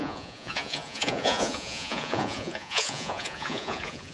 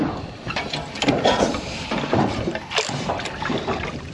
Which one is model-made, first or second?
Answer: first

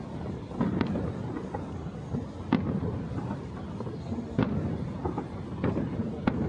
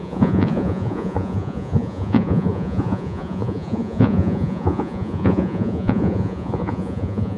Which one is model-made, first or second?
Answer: second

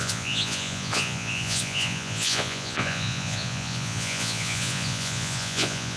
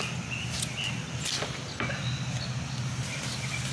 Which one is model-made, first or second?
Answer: first